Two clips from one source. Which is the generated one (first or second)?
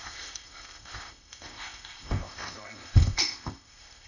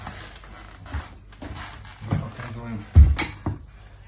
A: first